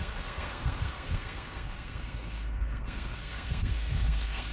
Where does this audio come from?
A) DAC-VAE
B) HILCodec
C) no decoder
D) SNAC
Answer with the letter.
D